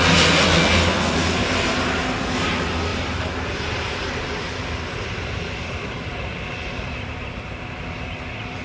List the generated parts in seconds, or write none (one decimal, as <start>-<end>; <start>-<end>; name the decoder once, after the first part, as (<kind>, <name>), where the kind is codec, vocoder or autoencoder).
1.4-2.5 (vocoder, BigVGAN v2); 2.9-7.7